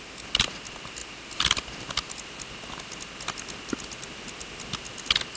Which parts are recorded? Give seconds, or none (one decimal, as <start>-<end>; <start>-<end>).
0.0-5.4